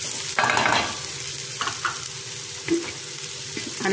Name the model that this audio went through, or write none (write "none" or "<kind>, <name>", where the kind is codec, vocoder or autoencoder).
none